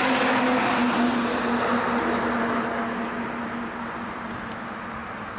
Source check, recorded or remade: recorded